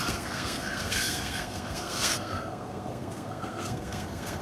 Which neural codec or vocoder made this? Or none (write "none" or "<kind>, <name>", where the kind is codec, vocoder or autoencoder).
codec, SNAC